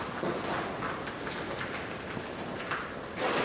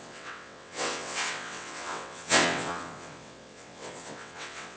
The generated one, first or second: second